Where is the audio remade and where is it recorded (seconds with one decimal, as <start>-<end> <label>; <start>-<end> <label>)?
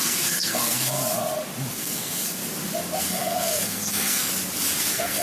0.0-1.0 remade; 1.0-1.7 recorded; 1.7-2.4 remade; 2.4-3.0 recorded; 3.0-4.3 remade; 4.3-4.8 recorded; 4.8-5.2 remade